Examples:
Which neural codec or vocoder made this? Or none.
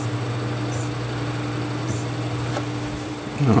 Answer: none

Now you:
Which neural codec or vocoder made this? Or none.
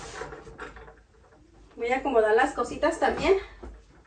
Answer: none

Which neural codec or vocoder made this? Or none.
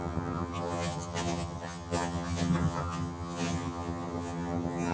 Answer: vocoder, HiFi-GAN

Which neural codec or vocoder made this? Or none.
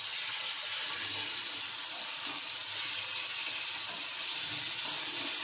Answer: none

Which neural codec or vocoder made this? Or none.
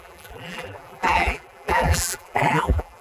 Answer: vocoder, BigVGAN v2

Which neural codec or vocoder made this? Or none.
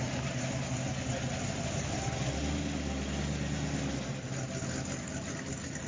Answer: none